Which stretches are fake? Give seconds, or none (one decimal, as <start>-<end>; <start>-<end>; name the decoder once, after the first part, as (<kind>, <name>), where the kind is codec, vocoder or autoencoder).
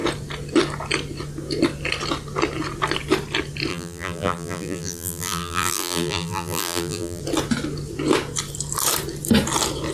3.7-7.2 (vocoder, BigVGAN v2)